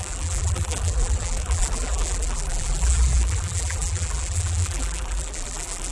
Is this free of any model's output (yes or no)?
no